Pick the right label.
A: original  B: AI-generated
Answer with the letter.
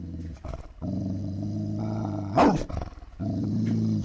B